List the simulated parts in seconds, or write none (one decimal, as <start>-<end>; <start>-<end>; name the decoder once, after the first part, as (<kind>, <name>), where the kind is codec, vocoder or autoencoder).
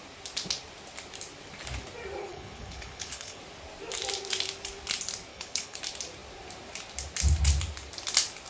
2.2-3.4 (codec, HILCodec); 5.3-5.8